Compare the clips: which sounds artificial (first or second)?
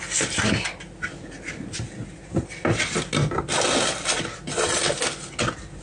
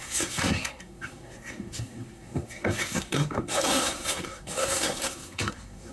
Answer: second